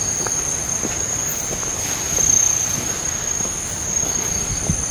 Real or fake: real